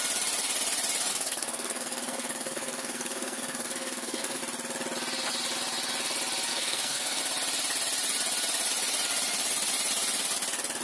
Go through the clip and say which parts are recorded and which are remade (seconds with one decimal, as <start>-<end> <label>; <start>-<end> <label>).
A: 0.0-1.1 recorded; 1.1-4.4 remade; 4.4-6.5 recorded; 6.5-7.2 remade; 7.2-10.8 recorded